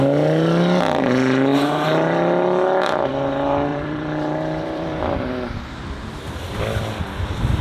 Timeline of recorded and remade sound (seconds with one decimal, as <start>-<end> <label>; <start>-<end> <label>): 0.0-3.7 recorded; 3.7-5.7 remade; 5.7-7.6 recorded